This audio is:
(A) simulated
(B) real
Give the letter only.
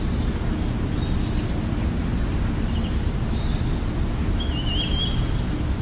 B